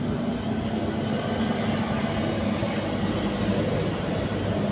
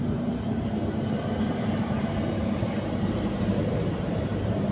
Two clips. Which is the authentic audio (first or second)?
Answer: first